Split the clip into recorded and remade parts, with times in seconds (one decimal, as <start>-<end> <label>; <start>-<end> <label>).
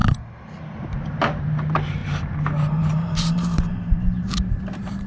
0.0-0.9 recorded; 0.9-5.1 remade